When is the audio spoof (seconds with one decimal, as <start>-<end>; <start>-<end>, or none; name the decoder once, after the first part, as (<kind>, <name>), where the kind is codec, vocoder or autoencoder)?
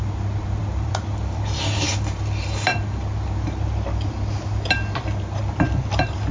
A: 0.6-1.6 (vocoder, BigVGAN v2)